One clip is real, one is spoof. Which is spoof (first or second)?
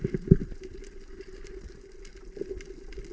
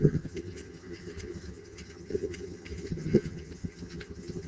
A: second